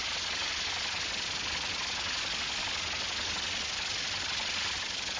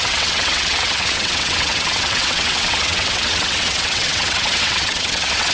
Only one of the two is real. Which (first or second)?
first